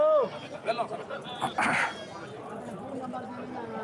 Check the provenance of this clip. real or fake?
real